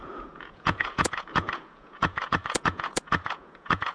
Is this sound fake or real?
fake